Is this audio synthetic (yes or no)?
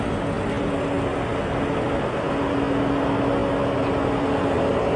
no